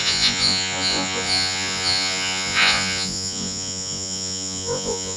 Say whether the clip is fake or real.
fake